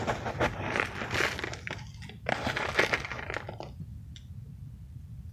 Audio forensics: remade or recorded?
recorded